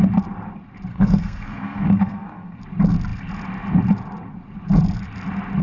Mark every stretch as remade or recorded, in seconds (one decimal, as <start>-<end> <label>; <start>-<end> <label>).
0.0-0.9 recorded; 0.9-2.6 remade; 2.6-5.6 recorded